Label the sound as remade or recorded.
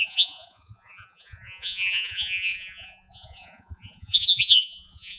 remade